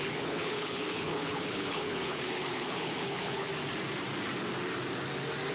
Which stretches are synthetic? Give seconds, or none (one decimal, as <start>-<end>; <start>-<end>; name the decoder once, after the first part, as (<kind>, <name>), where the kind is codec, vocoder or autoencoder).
0.0-3.5 (codec, HILCodec)

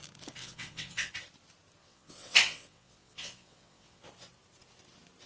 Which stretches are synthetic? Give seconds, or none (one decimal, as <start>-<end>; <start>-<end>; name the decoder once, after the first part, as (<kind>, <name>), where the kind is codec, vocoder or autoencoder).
0.4-1.1 (vocoder, WaveNeXt); 1.8-4.0

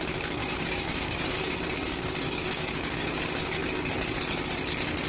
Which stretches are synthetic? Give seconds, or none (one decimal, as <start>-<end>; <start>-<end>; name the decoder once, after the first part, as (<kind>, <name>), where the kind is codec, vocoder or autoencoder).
0.4-3.2 (codec, DAC)

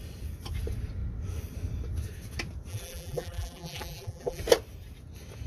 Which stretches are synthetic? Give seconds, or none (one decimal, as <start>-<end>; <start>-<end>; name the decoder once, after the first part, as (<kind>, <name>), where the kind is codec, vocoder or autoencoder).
2.7-4.4 (vocoder, BigVGAN v2)

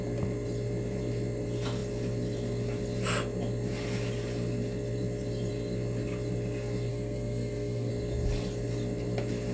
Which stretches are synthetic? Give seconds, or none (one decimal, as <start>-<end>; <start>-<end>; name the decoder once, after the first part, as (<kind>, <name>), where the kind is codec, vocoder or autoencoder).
6.9-7.9 (codec, SNAC)

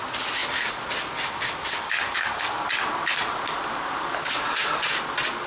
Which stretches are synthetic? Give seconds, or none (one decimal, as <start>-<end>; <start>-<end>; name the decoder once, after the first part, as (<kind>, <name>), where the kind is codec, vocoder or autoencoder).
none